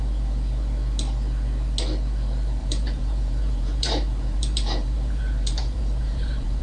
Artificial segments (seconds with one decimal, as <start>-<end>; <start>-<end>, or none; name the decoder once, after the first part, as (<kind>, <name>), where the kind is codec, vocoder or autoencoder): 2.6-6.6 (vocoder, BigVGAN v2)